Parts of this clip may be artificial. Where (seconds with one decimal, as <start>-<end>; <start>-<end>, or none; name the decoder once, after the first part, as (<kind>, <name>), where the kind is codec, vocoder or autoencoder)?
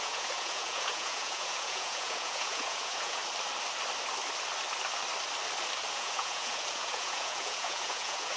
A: 0.0-3.2 (vocoder, Vocos); 5.9-8.4